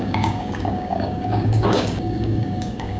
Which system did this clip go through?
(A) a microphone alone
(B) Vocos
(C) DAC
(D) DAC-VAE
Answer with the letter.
C